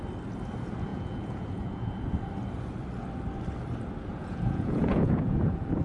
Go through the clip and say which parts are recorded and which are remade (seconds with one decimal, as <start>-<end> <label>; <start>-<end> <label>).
0.0-0.9 recorded; 0.9-2.1 remade; 2.1-4.1 recorded; 4.1-5.8 remade